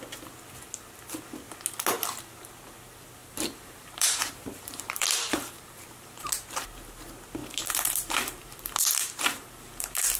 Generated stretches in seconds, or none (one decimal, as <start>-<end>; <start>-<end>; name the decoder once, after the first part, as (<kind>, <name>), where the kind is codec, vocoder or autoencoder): 3.2-6.3 (vocoder, BigVGAN v2); 7.4-10.2

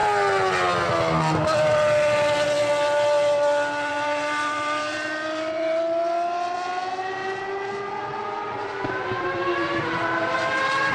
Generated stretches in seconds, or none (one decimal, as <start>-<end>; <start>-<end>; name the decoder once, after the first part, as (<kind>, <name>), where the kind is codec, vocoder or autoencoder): 3.9-7.2 (vocoder, BigVGAN v2); 8.9-10.9

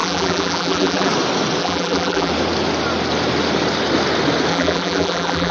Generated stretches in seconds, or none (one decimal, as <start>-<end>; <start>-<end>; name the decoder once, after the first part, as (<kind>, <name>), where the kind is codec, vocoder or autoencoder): 0.0-1.1 (vocoder, BigVGAN v2); 1.6-2.3; 4.5-5.5

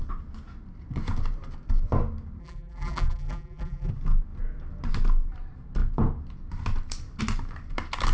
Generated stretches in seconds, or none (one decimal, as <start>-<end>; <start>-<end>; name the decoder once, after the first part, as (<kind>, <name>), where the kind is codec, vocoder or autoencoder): 2.4-3.9 (vocoder, BigVGAN v2)

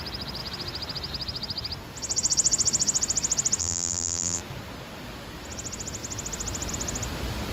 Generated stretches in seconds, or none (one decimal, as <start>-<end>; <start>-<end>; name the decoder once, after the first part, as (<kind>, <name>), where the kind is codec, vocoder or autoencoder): 3.6-4.4 (vocoder, BigVGAN v2)

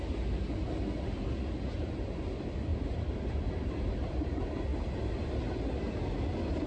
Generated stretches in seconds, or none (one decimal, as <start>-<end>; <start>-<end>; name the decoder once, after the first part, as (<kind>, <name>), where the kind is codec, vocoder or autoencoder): 2.7-4.3 (vocoder, BigVGAN v2); 4.7-5.4

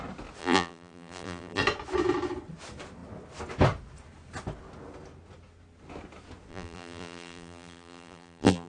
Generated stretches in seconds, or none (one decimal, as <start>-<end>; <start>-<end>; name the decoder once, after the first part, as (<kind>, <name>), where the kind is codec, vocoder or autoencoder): 0.4-1.6 (vocoder, BigVGAN v2); 6.5-8.7

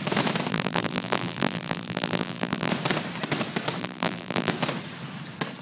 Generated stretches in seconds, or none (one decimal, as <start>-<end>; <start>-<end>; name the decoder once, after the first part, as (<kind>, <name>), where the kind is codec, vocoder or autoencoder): 0.5-2.7 (vocoder, BigVGAN v2); 3.8-4.5